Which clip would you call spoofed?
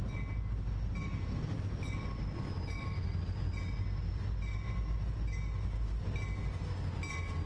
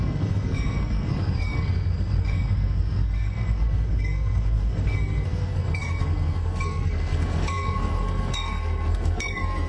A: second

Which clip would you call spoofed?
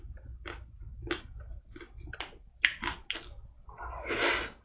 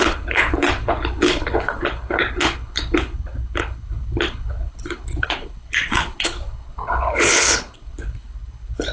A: second